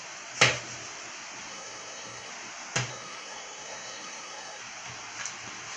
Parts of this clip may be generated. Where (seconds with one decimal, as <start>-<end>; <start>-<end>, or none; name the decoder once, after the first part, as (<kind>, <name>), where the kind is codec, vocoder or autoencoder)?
1.5-2.3 (codec, SNAC); 2.9-4.6